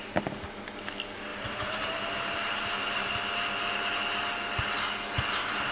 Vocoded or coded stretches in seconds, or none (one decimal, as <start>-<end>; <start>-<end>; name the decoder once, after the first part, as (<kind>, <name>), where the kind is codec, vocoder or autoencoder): 1.3-3.1 (vocoder, BigVGAN v2)